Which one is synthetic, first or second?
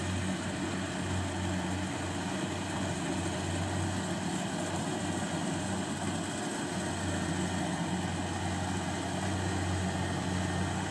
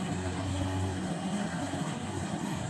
second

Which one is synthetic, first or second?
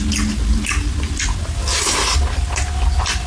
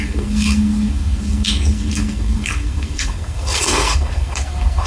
second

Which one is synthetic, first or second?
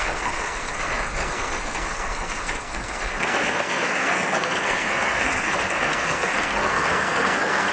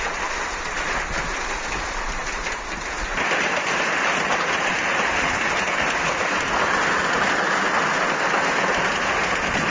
first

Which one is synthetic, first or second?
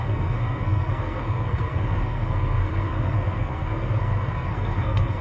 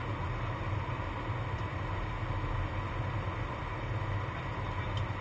first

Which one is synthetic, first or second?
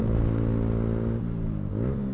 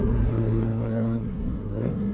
second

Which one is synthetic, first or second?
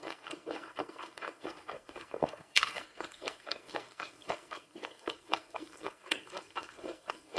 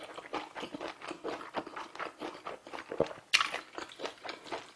first